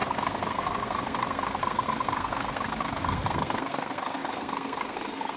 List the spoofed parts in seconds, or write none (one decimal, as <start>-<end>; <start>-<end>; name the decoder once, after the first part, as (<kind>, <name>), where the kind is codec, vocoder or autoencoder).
0.0-5.4 (codec, SNAC)